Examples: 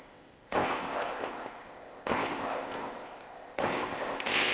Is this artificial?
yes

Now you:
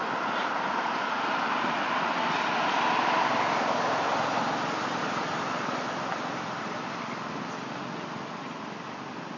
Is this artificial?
no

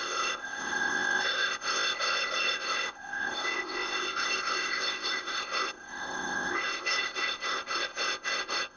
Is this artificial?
yes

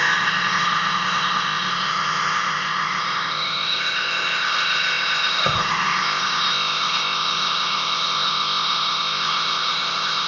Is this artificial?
yes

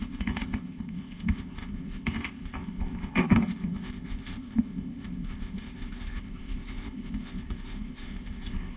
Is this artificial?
yes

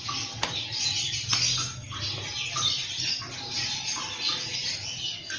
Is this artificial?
no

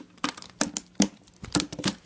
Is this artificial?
no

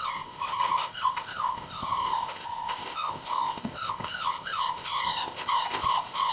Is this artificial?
yes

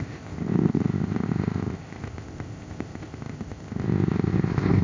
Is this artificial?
yes